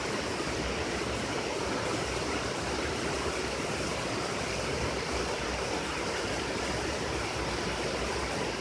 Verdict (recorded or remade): recorded